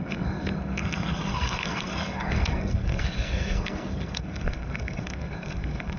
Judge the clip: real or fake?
fake